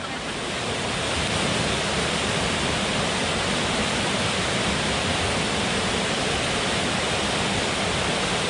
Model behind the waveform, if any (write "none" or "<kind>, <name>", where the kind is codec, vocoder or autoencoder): none